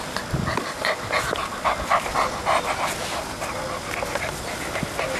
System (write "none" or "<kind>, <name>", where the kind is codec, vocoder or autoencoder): none